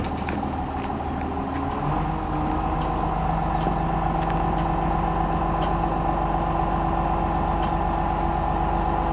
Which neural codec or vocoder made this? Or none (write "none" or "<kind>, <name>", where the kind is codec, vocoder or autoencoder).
none